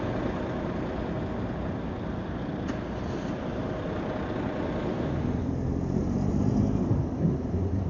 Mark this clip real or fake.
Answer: real